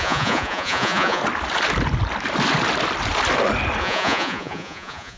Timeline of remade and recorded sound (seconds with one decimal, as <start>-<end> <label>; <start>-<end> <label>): 0.0-1.2 remade; 1.2-3.8 recorded; 3.8-5.2 remade